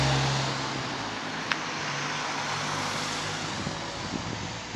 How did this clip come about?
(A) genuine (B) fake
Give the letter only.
A